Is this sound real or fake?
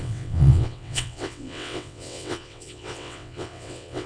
fake